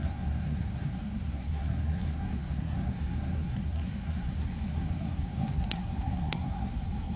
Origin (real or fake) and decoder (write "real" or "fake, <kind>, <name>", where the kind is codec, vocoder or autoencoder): fake, codec, SNAC